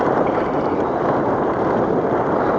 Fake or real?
real